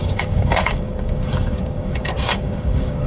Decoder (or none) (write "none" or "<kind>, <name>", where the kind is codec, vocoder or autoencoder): codec, DAC